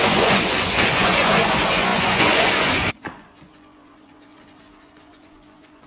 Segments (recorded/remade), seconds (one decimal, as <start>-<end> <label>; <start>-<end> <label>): 0.0-5.9 remade